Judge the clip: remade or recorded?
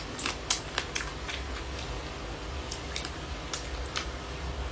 recorded